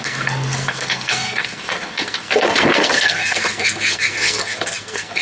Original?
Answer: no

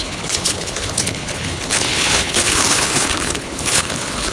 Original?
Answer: no